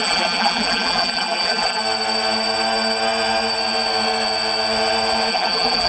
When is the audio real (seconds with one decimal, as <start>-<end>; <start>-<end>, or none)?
1.8-5.3